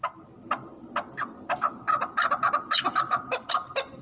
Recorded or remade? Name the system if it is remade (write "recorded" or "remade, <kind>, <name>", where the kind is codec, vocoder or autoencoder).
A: recorded